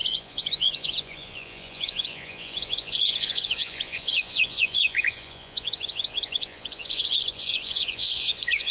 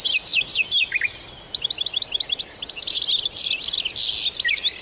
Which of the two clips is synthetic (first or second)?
first